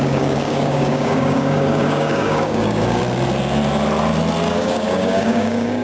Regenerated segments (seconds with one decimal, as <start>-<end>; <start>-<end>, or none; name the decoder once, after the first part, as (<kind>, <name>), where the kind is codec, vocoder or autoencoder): 0.0-3.0 (codec, DAC); 4.5-5.8